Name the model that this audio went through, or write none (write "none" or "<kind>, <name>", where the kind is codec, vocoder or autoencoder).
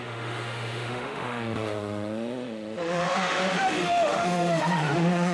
autoencoder, DAC-VAE